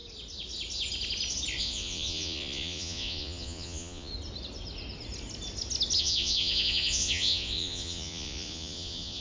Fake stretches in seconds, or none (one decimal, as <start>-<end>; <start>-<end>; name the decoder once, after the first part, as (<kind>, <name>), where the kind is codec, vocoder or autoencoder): 1.6-4.1 (vocoder, Vocos); 6.0-9.2